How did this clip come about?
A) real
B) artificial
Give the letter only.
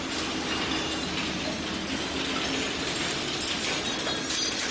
A